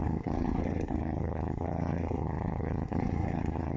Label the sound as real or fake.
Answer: fake